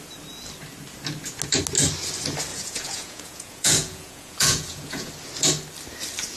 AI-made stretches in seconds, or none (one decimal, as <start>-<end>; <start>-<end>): 2.5-5.1